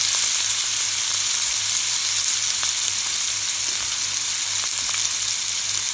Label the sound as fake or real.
real